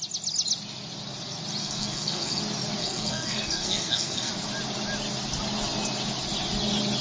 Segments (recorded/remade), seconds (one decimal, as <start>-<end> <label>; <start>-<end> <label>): 0.0-1.6 recorded; 1.6-2.4 remade; 2.4-2.8 recorded; 2.8-4.3 remade; 4.3-7.0 recorded